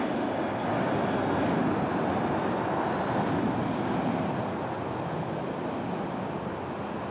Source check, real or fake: real